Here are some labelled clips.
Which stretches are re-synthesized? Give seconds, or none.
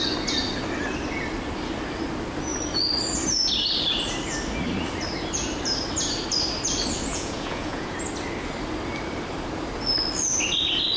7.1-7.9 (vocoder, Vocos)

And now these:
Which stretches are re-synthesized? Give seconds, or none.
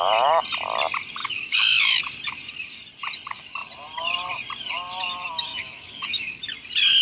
1.2-2.0 (autoencoder, DAC-VAE); 5.5-6.4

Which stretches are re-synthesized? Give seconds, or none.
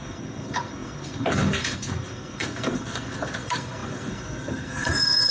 0.0-5.3 (codec, SNAC)